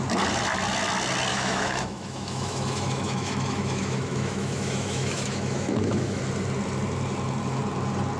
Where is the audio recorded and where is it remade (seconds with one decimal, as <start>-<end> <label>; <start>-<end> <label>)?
0.0-1.3 recorded; 1.3-6.2 remade; 6.2-8.2 recorded

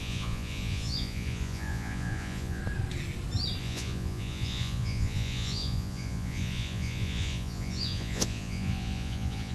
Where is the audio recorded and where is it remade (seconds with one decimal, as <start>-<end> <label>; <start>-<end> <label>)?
0.0-2.6 remade; 2.6-3.6 recorded; 3.6-9.5 remade